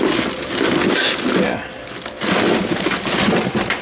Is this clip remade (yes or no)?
no